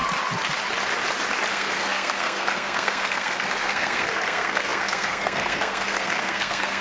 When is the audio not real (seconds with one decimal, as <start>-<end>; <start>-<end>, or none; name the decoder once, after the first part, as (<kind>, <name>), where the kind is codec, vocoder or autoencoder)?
1.5-6.8 (codec, SNAC)